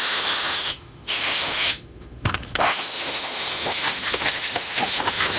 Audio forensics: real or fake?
fake